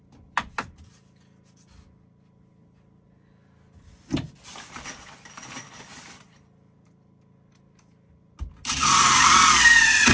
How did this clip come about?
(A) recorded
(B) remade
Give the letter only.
A